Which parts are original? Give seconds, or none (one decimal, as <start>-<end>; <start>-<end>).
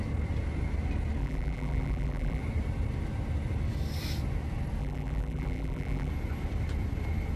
0.0-1.2; 2.4-4.8; 6.1-7.4